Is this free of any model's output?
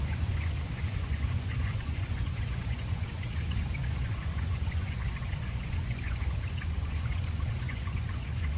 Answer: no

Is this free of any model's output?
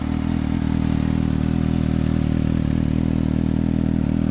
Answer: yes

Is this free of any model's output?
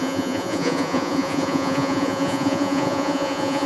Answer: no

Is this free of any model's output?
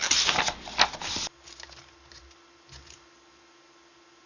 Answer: yes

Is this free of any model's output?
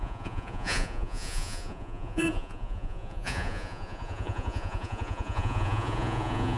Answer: no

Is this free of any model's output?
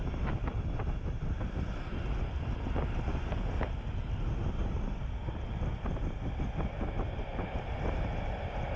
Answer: yes